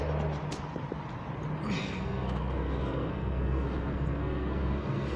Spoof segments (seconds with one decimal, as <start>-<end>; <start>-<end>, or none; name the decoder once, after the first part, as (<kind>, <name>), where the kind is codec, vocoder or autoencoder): 1.8-5.2 (codec, SNAC)